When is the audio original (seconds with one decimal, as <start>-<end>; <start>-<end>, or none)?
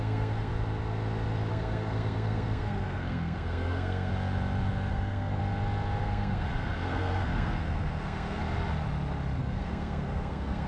0.5-1.5; 4.1-4.9; 5.4-6.0; 8.4-9.4